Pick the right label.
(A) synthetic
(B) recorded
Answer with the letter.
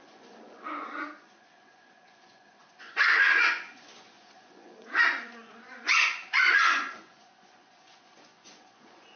A